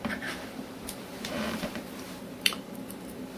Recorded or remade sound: remade